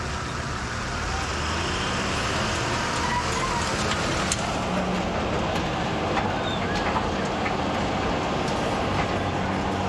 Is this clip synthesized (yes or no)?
no